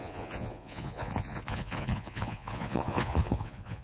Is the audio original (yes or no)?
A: no